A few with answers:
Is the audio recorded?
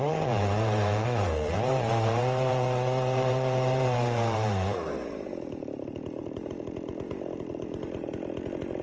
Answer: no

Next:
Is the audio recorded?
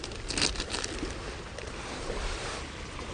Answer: yes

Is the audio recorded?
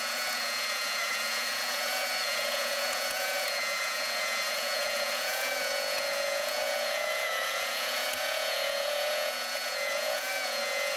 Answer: no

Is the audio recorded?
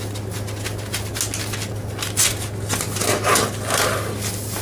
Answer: yes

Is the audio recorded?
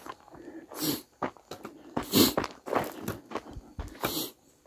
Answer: yes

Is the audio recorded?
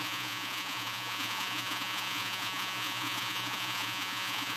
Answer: no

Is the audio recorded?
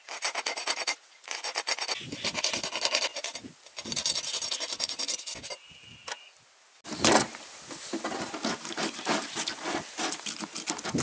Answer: yes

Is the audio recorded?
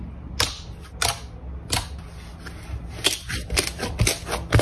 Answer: yes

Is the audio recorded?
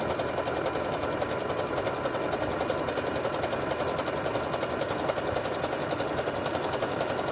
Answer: yes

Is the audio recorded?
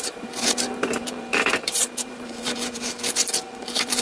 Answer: no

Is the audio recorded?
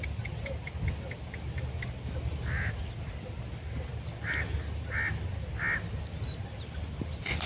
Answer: yes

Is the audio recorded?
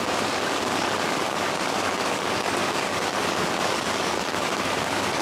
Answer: no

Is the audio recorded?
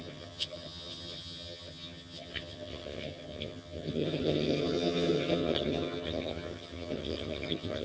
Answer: no